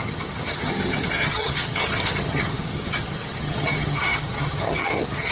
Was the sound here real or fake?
fake